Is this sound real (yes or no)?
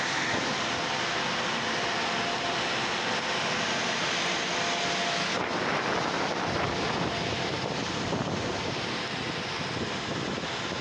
yes